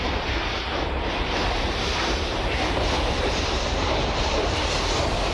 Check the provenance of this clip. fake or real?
fake